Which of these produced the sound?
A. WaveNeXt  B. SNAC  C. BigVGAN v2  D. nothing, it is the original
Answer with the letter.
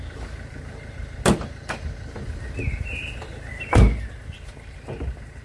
D